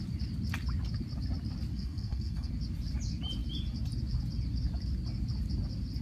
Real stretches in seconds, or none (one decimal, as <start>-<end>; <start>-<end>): 0.0-1.7; 2.5-6.0